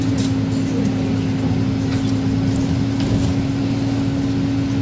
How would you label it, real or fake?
real